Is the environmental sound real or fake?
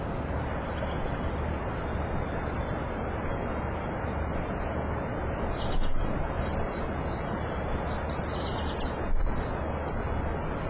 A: real